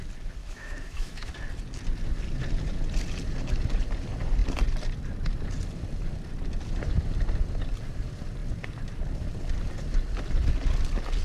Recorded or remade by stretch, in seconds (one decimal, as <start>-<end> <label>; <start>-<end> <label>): 0.0-0.4 recorded; 0.4-1.3 remade; 1.3-11.2 recorded